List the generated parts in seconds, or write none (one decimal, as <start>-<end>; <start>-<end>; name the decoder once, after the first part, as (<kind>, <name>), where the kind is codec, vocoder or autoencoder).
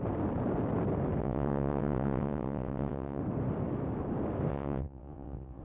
1.2-3.2 (vocoder, WaveNeXt); 4.5-5.6